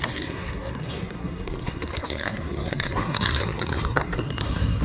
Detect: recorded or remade remade